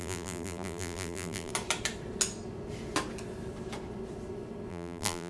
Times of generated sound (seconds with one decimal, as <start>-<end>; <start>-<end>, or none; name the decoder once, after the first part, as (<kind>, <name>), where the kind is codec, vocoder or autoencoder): 0.0-1.5 (vocoder, BigVGAN v2); 4.7-5.3